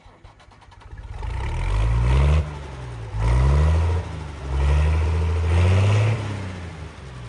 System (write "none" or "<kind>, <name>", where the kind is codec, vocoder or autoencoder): none